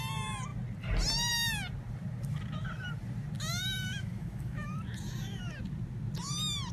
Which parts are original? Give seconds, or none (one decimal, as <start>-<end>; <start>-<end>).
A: 0.0-3.5; 4.8-6.7